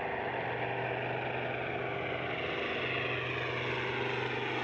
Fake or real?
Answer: real